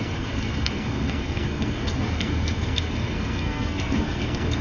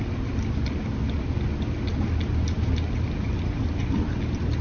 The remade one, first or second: first